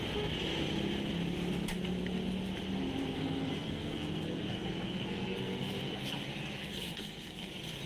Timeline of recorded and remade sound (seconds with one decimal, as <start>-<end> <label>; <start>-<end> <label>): 0.0-3.1 recorded; 3.1-6.0 remade; 6.0-6.6 recorded; 6.6-7.5 remade; 7.5-7.9 recorded